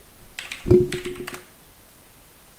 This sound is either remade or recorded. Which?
recorded